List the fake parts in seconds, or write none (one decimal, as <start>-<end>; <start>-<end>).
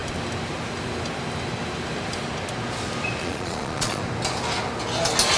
3.2-4.0